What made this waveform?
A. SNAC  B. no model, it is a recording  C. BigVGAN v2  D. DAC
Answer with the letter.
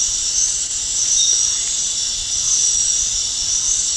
B